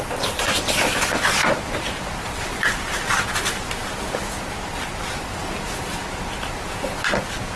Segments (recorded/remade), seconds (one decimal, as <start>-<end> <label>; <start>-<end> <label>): 0.0-1.4 recorded; 1.4-2.6 remade; 2.6-3.8 recorded; 3.8-6.2 remade; 6.2-7.6 recorded